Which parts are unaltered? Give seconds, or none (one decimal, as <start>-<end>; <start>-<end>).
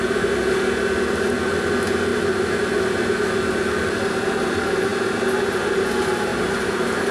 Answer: 0.0-2.1; 2.9-6.3